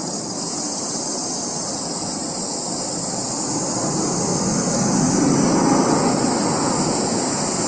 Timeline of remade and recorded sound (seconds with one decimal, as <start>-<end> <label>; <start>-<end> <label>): 0.0-4.3 recorded; 4.3-4.9 remade; 4.9-7.7 recorded

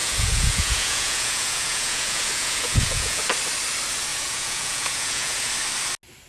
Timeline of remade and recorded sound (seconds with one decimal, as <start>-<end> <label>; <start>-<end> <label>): 0.0-3.2 remade; 3.2-4.1 recorded; 4.1-5.5 remade; 5.5-6.3 recorded

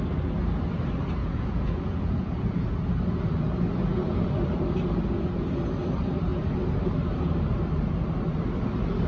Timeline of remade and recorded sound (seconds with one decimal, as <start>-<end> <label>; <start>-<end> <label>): 0.0-1.2 recorded; 1.2-2.8 remade; 2.8-9.1 recorded

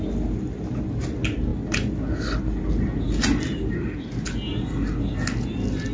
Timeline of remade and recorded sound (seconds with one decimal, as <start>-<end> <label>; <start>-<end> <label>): 0.0-5.9 recorded

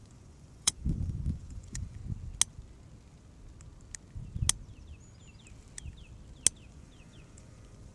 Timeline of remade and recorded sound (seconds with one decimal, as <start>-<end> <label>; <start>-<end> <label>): 0.0-2.0 remade; 2.0-6.7 recorded; 6.7-7.9 remade

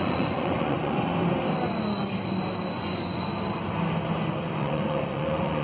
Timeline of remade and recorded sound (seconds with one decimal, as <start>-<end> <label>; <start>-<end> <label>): 0.0-1.1 remade; 1.1-2.7 recorded; 2.7-3.2 remade; 3.2-4.5 recorded; 4.5-5.6 remade